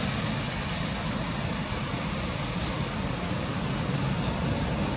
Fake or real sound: real